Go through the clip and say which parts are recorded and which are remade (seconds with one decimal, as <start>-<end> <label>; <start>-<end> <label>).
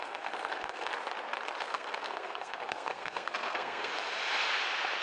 0.0-0.9 remade; 0.9-1.6 recorded; 1.6-3.9 remade; 3.9-5.0 recorded